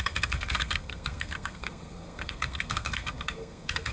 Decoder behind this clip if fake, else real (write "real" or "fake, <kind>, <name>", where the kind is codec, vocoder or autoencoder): fake, codec, SNAC